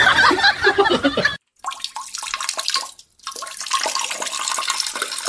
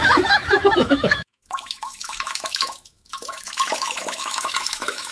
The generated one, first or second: second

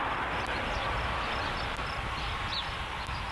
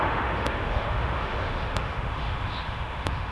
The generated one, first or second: second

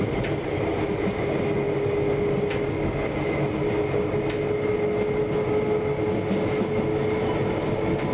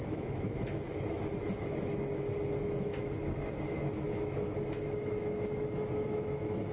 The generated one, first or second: second